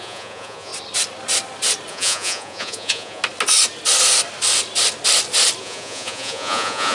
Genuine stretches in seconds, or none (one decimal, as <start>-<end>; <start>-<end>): 0.7-1.9; 3.2-5.6